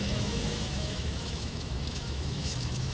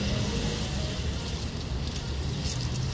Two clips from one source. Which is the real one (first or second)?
second